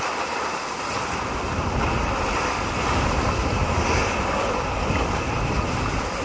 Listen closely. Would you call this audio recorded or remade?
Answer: recorded